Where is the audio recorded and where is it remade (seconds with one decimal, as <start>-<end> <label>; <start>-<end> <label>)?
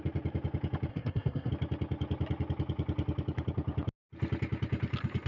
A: 0.0-0.9 recorded; 0.9-1.5 remade; 1.5-5.3 recorded